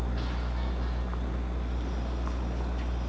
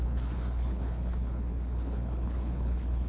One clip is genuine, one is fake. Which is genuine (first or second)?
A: first